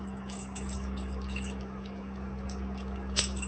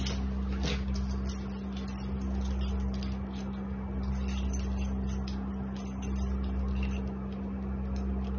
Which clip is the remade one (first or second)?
first